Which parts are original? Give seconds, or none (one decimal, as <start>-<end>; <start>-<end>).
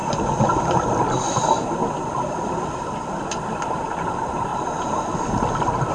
0.0-0.6; 1.8-4.0; 4.5-5.9